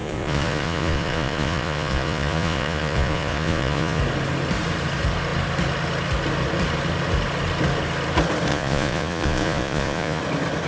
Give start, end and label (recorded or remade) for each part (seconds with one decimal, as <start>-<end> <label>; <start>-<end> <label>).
0.0-4.0 remade; 4.0-8.5 recorded; 8.5-10.2 remade; 10.2-10.7 recorded